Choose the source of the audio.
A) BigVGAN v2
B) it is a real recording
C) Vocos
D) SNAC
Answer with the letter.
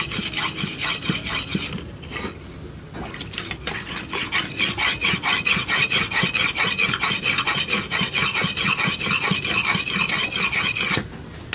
B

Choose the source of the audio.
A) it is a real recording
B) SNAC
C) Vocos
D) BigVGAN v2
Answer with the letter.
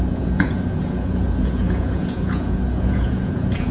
C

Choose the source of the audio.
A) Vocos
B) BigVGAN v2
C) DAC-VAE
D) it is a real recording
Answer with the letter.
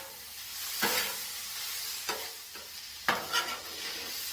D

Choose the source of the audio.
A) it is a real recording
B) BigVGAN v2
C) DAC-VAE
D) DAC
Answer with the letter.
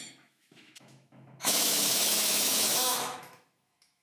C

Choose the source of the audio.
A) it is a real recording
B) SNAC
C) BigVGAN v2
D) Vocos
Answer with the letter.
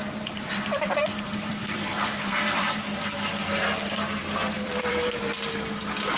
C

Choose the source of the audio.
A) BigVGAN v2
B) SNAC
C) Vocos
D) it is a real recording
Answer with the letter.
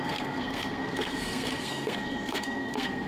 B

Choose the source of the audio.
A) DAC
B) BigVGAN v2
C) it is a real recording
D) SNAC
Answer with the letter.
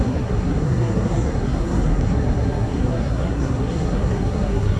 D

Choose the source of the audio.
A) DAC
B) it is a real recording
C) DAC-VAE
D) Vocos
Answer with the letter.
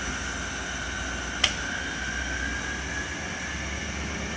B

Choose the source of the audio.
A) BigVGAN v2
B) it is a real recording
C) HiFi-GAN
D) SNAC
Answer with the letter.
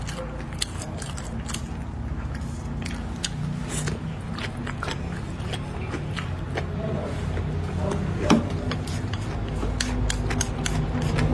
B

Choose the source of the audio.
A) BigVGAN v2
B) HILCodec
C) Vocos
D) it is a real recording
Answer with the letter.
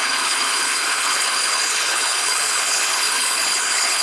B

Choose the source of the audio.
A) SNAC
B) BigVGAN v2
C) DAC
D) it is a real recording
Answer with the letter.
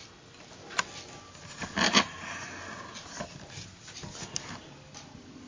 D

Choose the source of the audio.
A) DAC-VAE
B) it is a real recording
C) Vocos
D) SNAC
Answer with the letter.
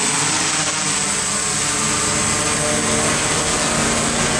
B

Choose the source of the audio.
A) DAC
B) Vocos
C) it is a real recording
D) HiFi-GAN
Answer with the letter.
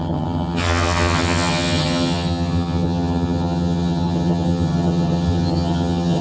D